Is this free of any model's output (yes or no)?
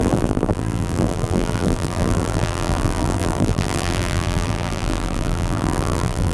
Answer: no